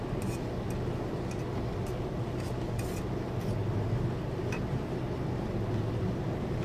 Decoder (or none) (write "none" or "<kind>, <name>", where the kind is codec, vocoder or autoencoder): none